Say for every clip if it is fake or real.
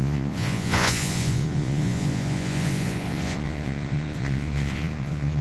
fake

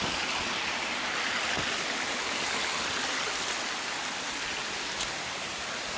real